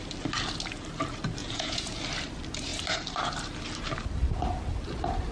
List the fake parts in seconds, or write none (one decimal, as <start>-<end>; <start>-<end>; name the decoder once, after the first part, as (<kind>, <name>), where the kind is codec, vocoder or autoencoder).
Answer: 1.4-2.0 (vocoder, Vocos)